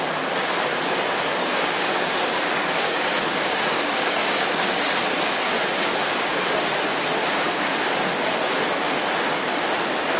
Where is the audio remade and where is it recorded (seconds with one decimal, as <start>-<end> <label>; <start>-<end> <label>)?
0.0-1.4 recorded; 1.4-5.0 remade; 5.0-10.2 recorded